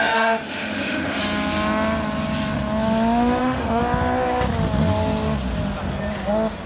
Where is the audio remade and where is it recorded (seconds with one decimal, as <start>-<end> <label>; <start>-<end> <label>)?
0.0-1.2 remade; 1.2-3.4 recorded; 3.4-3.8 remade; 3.8-6.7 recorded